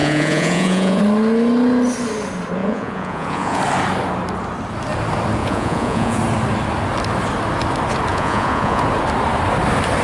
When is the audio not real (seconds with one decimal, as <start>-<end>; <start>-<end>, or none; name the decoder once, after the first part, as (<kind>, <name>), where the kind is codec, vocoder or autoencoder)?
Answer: 0.0-1.0 (vocoder, Vocos); 2.6-3.6; 5.4-6.2; 8.1-8.8

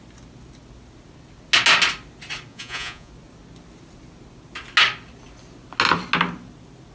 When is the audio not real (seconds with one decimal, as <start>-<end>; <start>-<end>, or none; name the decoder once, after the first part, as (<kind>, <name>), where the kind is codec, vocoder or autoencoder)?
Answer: 2.5-3.1 (vocoder, Vocos)

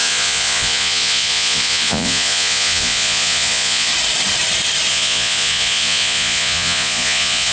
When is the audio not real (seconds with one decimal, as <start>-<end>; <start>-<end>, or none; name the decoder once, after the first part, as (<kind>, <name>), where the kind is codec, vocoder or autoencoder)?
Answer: 0.0-3.9 (vocoder, Vocos); 4.9-7.5

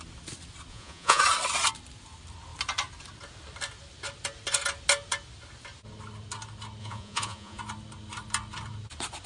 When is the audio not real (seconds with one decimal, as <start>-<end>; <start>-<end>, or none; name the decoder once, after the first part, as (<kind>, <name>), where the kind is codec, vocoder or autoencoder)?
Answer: 0.7-1.2 (vocoder, Vocos); 6.8-7.6

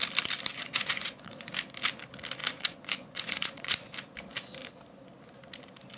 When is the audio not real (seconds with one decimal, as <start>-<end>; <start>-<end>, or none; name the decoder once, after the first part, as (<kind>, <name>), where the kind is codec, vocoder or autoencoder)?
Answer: 0.5-1.5 (vocoder, Vocos); 2.4-3.9

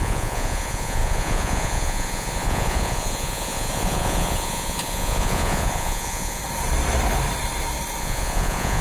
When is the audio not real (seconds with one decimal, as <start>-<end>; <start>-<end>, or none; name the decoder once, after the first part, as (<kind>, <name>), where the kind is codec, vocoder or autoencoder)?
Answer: 0.0-6.4 (vocoder, Vocos); 8.0-8.8